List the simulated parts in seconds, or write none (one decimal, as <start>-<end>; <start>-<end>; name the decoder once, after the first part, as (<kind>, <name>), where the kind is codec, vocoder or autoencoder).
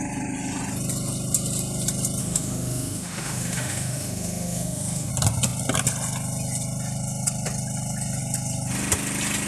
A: 2.2-5.1 (autoencoder, DAC-VAE)